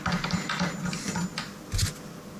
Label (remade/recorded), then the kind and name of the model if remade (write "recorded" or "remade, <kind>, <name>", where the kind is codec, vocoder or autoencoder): recorded